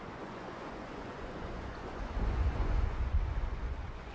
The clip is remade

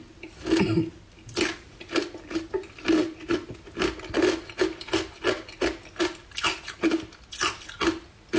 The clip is recorded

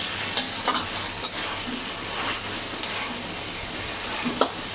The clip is remade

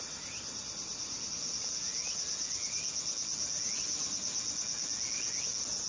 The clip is recorded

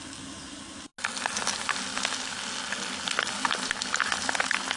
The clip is recorded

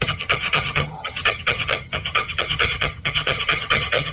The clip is remade